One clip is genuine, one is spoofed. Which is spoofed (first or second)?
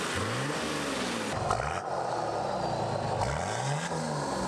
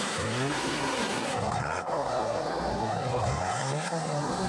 second